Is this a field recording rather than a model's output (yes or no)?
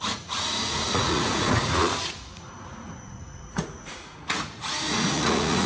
no